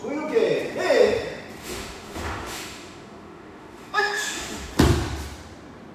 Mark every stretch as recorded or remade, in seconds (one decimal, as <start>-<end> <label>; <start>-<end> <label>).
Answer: 0.0-1.6 recorded; 1.6-4.7 remade; 4.7-5.9 recorded